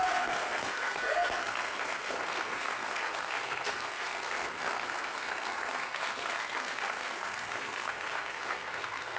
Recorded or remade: remade